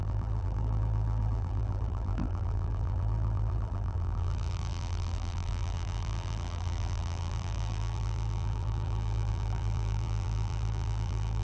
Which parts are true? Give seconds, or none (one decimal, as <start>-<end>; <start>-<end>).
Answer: none